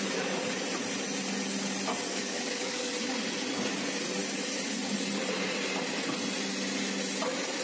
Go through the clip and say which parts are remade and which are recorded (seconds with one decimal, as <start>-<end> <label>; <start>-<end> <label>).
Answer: 0.0-2.1 recorded; 2.1-2.9 remade; 2.9-7.6 recorded

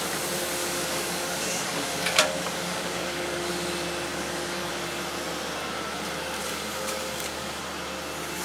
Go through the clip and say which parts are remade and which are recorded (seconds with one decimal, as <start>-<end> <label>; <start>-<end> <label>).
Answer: 0.0-0.6 recorded; 0.6-3.5 remade; 3.5-4.1 recorded; 4.1-4.7 remade; 4.7-6.4 recorded; 6.4-7.6 remade; 7.6-8.4 recorded

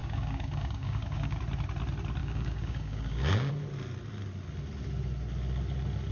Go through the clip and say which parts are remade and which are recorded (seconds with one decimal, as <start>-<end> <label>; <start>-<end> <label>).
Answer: 0.0-1.4 remade; 1.4-2.2 recorded; 2.2-3.5 remade; 3.5-6.1 recorded

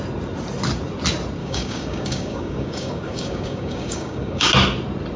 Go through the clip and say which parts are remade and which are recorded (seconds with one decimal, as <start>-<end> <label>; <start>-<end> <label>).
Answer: 0.0-1.4 recorded; 1.4-4.5 remade; 4.5-5.2 recorded